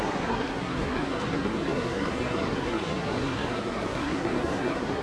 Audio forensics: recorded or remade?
remade